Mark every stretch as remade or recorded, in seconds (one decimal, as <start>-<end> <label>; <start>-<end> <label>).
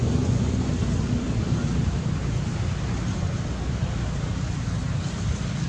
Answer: 0.0-0.7 remade; 0.7-5.7 recorded